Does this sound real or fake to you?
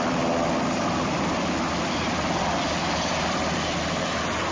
real